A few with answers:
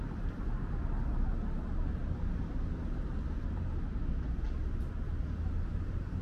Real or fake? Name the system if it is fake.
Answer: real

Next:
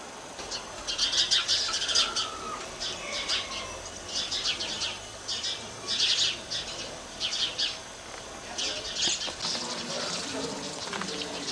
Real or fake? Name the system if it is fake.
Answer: real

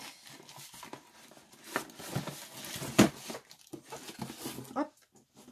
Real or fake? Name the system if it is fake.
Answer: real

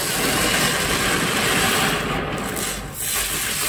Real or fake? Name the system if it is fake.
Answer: real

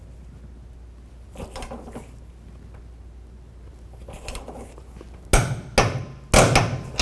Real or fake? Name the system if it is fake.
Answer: real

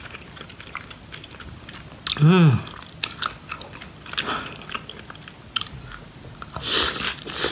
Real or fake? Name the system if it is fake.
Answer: real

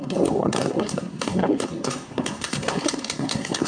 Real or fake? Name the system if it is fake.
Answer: fake, codec, SNAC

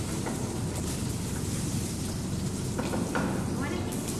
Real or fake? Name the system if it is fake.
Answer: real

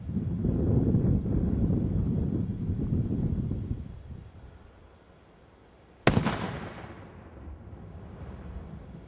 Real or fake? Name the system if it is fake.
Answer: real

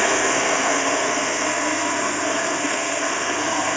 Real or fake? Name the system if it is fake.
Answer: fake, codec, SNAC